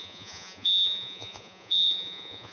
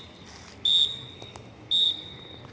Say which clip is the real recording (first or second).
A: second